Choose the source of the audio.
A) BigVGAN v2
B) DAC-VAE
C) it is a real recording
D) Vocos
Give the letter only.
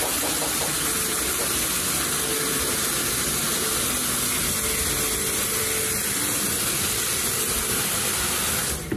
C